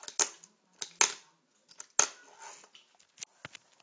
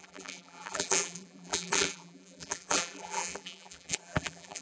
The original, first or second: first